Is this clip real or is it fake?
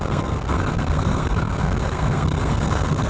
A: fake